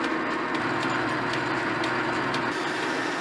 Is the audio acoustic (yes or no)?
yes